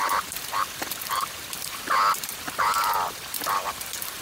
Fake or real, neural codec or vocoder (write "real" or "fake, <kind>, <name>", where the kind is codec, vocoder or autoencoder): fake, vocoder, BigVGAN v2